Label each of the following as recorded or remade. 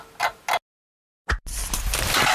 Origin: recorded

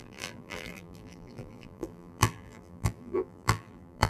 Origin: remade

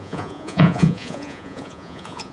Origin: remade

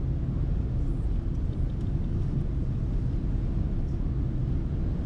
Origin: recorded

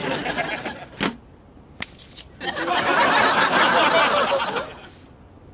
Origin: recorded